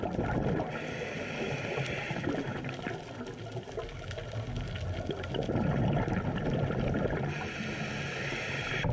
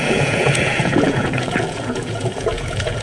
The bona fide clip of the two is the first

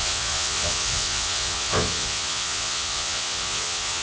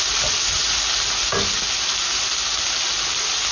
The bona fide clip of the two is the second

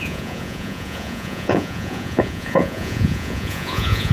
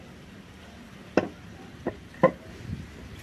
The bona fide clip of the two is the second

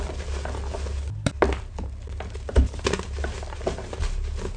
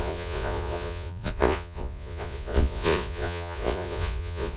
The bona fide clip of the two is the first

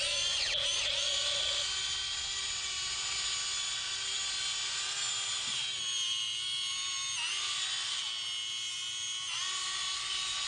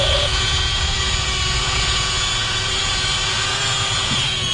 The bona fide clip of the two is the first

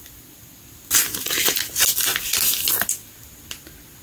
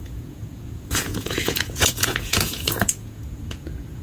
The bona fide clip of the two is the first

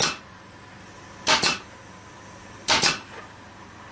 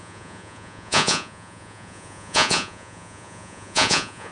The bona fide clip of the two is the first